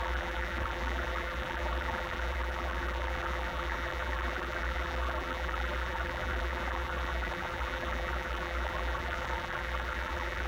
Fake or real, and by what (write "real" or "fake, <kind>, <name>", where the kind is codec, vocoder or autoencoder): fake, vocoder, BigVGAN v2